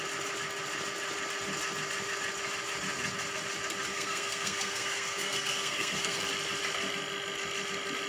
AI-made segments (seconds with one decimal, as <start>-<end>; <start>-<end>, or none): 3.9-6.2